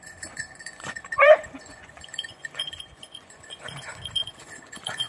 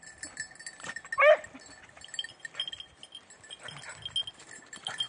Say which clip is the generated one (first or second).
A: first